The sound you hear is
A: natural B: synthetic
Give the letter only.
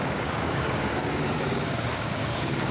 B